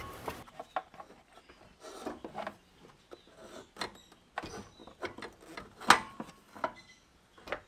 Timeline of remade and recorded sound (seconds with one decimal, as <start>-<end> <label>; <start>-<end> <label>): 0.0-0.8 recorded; 0.8-1.5 remade; 1.5-7.7 recorded